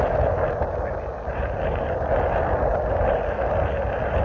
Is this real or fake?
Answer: real